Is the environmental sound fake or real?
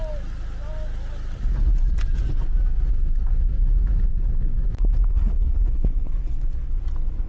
real